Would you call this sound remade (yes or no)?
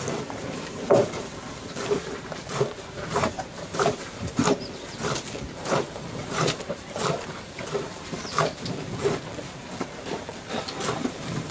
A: yes